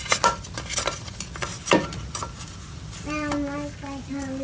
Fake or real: real